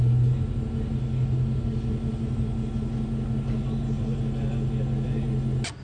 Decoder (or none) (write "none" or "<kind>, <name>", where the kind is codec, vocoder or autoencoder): none